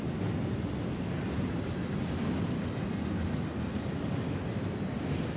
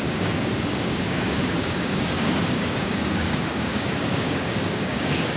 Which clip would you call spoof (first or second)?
second